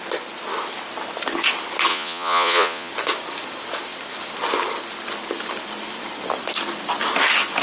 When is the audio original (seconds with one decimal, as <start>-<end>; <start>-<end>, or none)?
0.0-1.9; 2.9-7.6